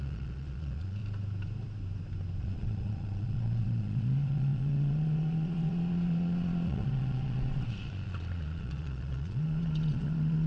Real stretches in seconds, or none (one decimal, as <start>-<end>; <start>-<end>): 1.0-2.4